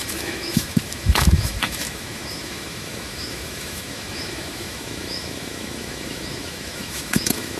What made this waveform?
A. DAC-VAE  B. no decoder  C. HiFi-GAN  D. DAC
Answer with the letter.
A